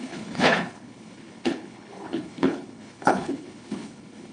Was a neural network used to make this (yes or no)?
yes